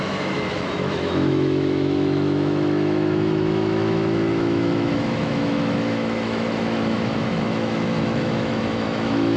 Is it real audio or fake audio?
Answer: fake